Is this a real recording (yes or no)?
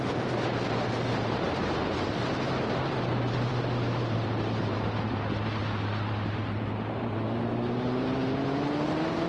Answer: no